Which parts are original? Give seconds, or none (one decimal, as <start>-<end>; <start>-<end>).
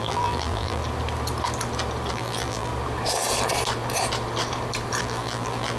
0.8-2.1; 2.7-5.0